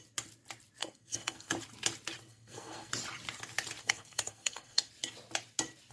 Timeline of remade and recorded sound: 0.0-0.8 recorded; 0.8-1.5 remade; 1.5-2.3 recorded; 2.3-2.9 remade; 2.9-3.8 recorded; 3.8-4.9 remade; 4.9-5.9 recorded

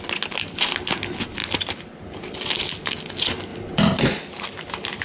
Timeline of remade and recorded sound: 0.0-5.0 recorded

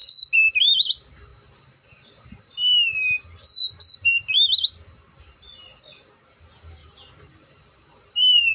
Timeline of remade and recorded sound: 0.0-6.8 recorded; 6.8-8.5 remade